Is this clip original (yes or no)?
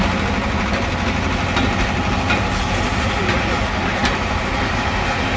yes